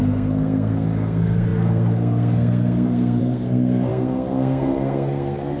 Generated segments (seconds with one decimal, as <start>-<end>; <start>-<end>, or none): 0.0-5.6